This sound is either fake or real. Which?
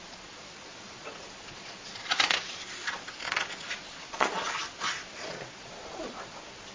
fake